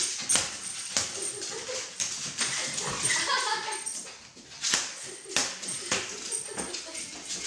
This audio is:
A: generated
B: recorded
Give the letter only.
B